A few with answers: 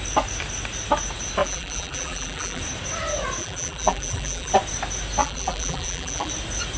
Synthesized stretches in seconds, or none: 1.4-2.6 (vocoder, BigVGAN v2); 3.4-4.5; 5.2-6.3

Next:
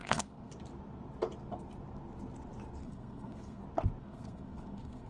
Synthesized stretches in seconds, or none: 0.0-0.5 (codec, SNAC); 2.8-3.6; 4.0-5.1

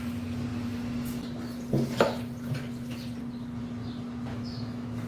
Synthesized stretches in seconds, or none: 4.3-5.1 (autoencoder, DAC-VAE)